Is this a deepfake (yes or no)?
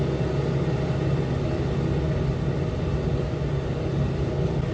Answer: no